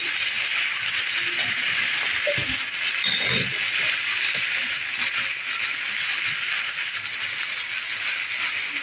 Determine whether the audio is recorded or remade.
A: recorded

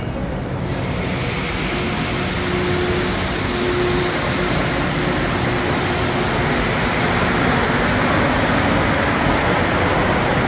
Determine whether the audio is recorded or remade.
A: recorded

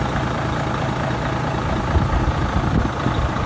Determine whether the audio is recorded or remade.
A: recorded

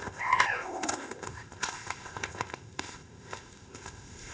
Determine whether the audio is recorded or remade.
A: remade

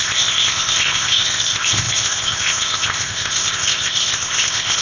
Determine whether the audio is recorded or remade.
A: remade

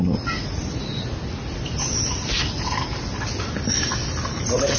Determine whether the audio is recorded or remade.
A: recorded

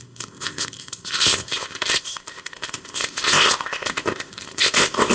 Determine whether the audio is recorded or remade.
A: remade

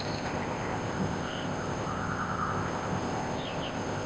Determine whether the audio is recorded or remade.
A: remade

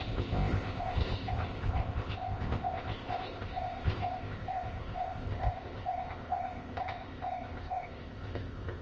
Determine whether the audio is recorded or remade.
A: remade